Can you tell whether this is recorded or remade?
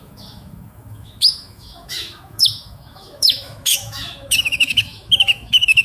remade